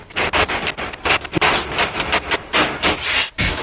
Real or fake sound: real